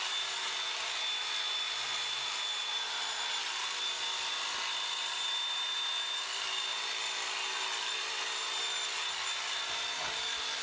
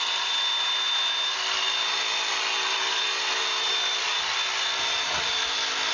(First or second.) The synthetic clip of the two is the first